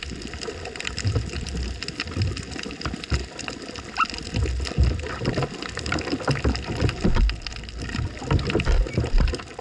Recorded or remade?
recorded